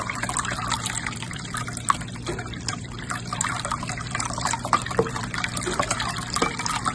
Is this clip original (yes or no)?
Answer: no